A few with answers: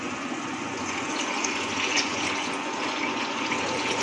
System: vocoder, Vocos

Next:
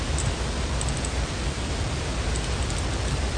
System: none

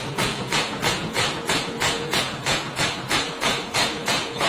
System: vocoder, Vocos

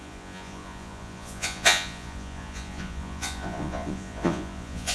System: vocoder, Vocos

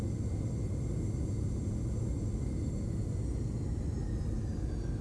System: none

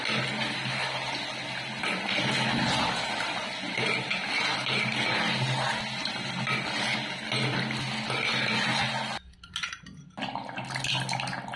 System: none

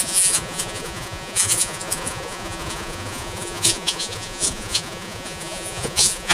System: vocoder, Vocos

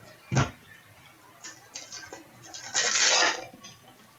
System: none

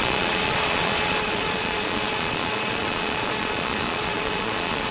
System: vocoder, Vocos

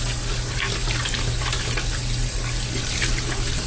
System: none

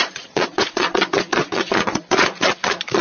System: vocoder, Vocos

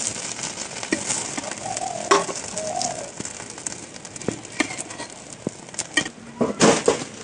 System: none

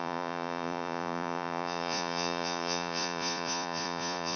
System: vocoder, Vocos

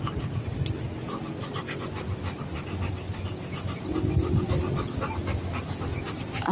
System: none